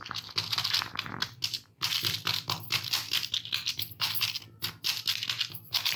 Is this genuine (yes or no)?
yes